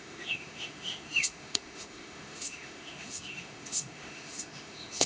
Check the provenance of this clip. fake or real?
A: fake